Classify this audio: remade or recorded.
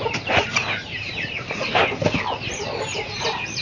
remade